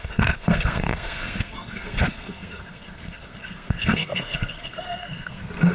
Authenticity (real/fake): fake